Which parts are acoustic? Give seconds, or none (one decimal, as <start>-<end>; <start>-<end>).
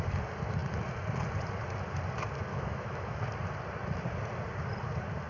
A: 0.0-2.5; 3.2-5.3